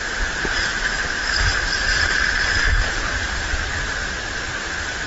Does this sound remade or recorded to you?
recorded